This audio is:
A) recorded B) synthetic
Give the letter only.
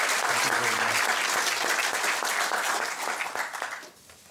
A